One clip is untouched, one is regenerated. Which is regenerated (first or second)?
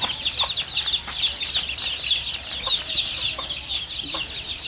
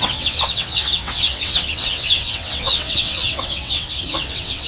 second